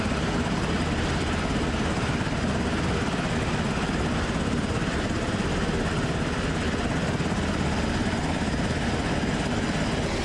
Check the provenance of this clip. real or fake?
real